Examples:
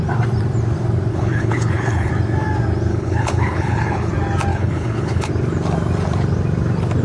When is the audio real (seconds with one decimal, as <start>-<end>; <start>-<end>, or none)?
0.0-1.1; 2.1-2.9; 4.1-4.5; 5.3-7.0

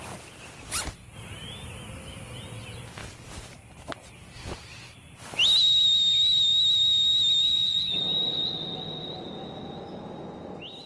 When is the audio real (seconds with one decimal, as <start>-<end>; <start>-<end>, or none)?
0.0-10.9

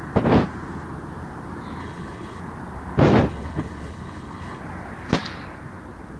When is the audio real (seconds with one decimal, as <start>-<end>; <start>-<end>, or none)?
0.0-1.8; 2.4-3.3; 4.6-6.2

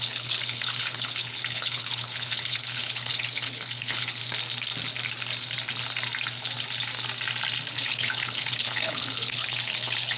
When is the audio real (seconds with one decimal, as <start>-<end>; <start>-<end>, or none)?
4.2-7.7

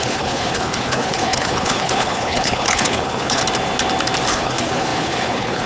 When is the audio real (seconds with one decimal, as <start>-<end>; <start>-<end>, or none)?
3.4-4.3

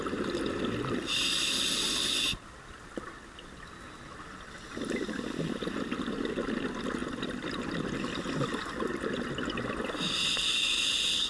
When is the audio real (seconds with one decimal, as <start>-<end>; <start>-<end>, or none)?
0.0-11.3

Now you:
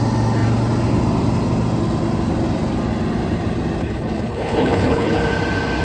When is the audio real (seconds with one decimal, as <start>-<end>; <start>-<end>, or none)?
0.0-3.8; 5.2-5.8